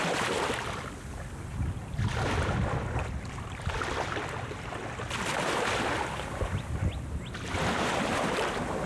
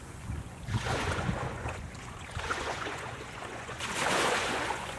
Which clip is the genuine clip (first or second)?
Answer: first